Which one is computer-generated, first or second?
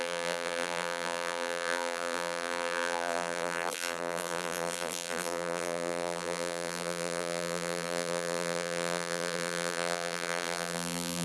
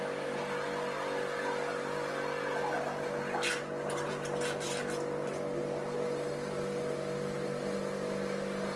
first